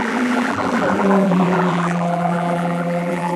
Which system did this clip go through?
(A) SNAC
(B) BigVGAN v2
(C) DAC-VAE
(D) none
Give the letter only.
B